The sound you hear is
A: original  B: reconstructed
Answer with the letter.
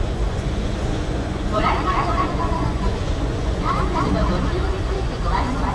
B